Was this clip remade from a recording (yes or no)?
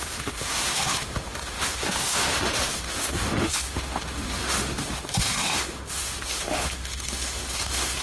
yes